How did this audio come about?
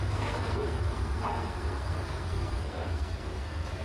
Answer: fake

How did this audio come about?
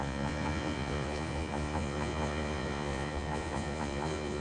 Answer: fake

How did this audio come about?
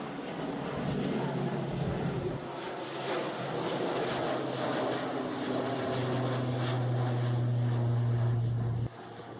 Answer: real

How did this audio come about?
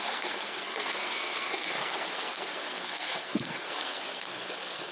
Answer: fake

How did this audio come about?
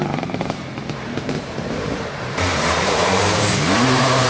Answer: fake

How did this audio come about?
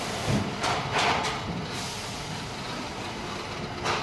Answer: real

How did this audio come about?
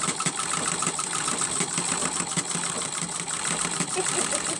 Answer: real